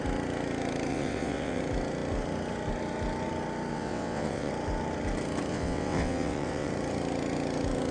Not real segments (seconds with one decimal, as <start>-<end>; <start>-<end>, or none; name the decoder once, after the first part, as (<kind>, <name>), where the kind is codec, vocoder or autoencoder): 0.9-1.6 (vocoder, WaveNeXt); 3.7-4.5; 5.5-6.7